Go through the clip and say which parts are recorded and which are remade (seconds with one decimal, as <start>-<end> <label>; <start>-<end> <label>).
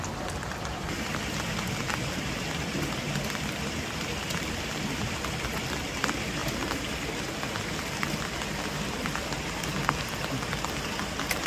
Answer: 0.0-6.4 remade; 6.4-7.7 recorded; 7.7-11.5 remade